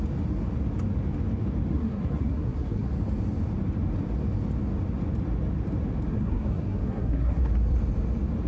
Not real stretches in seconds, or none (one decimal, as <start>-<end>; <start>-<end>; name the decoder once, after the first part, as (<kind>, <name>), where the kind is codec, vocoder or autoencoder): 1.7-2.9 (codec, SNAC); 6.1-7.4